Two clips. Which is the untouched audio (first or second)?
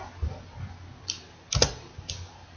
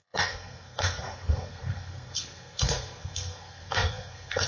first